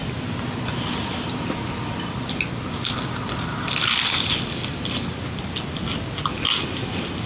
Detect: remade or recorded recorded